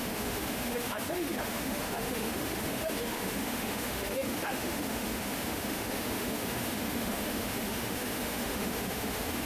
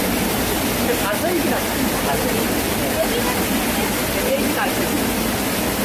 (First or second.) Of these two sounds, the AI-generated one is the first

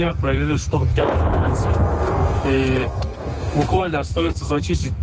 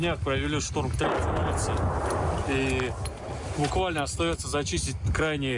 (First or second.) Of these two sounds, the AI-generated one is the first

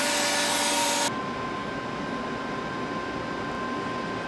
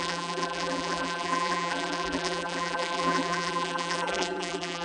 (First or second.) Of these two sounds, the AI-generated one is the second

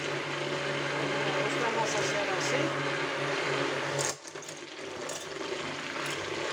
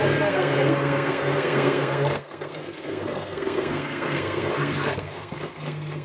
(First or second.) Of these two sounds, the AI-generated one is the second